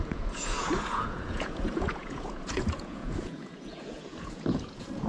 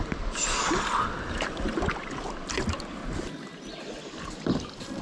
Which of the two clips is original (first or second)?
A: second